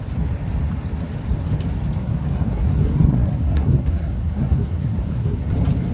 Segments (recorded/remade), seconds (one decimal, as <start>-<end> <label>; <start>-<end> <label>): 0.0-2.0 recorded; 2.0-5.5 remade; 5.5-5.9 recorded